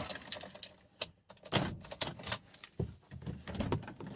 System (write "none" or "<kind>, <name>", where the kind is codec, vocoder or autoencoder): none